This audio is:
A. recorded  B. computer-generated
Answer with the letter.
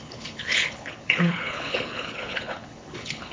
B